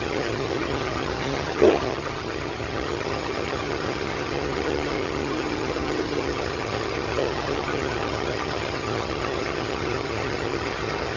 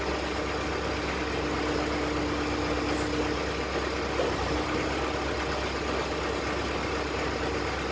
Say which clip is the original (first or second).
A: second